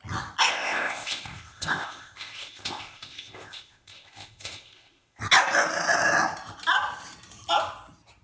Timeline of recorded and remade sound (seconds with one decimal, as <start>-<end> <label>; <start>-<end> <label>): 0.0-0.5 recorded; 0.5-5.2 remade; 5.2-8.2 recorded